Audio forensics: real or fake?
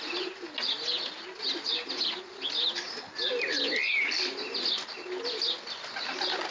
real